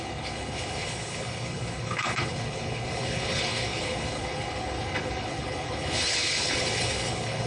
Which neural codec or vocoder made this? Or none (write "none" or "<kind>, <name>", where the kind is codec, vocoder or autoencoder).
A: codec, HILCodec